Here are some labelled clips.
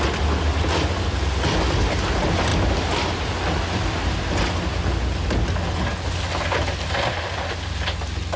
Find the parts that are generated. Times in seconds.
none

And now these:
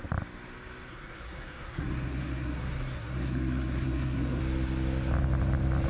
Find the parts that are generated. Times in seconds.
0.9-4.4 (codec, SNAC)

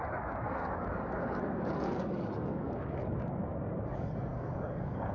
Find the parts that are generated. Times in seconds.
0.0-5.1 (codec, DAC)